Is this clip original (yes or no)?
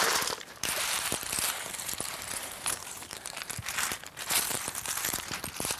no